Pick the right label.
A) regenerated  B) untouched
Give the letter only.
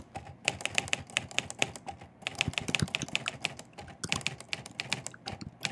B